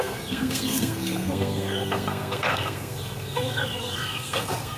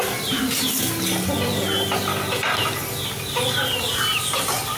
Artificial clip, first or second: first